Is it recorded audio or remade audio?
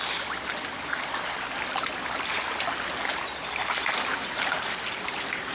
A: recorded